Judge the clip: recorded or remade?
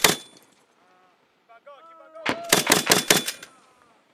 recorded